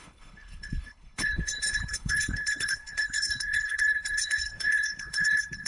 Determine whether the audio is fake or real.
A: fake